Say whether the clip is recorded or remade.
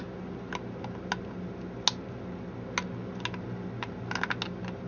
recorded